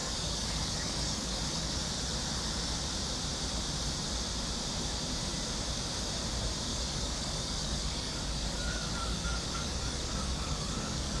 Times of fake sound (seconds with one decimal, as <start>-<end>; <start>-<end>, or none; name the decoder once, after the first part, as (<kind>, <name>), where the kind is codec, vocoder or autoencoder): 0.0-1.8 (codec, DAC); 6.7-11.2